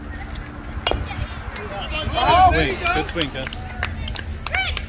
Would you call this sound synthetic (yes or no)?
no